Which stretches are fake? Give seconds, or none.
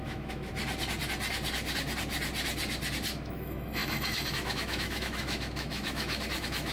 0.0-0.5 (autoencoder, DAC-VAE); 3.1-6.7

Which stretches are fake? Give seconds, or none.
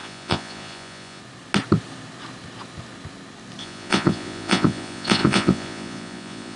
0.0-1.2 (vocoder, Vocos); 3.6-6.6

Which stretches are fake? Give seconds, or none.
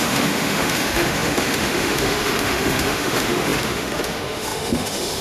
0.0-5.2 (autoencoder, DAC-VAE)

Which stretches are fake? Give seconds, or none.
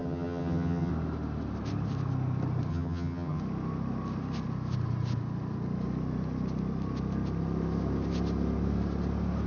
0.0-0.9 (vocoder, HiFi-GAN); 2.7-3.4